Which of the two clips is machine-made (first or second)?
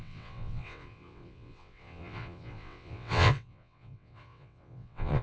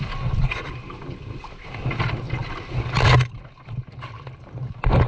first